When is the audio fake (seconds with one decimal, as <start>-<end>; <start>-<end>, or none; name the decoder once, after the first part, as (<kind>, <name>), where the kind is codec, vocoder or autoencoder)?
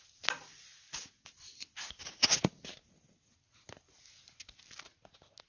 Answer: none